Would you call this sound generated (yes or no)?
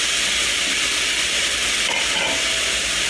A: no